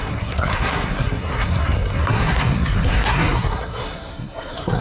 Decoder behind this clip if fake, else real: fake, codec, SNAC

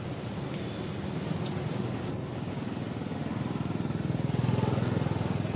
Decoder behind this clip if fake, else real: real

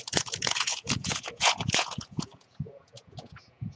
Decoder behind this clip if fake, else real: fake, vocoder, Vocos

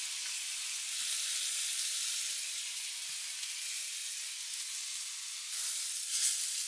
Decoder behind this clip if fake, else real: real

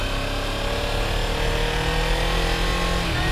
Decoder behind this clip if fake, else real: real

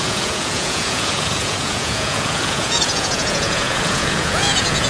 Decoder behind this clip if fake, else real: fake, vocoder, Vocos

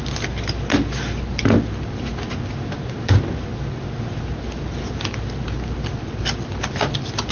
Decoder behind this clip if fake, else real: real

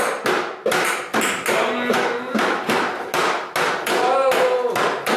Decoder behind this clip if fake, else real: real